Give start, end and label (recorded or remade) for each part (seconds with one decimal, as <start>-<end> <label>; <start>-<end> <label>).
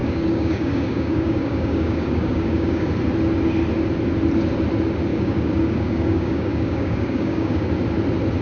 0.0-2.9 remade; 2.9-5.1 recorded; 5.1-7.7 remade; 7.7-8.4 recorded